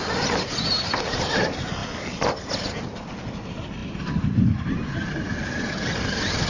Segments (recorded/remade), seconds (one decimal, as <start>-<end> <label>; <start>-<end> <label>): 0.0-6.5 recorded